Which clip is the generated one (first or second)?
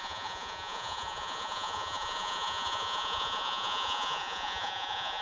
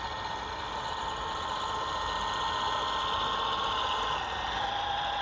first